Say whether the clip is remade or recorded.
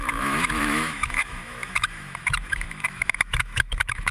remade